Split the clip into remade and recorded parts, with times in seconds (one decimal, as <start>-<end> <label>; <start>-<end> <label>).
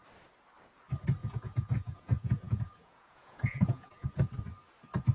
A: 0.0-1.2 recorded; 1.2-4.3 remade; 4.3-5.1 recorded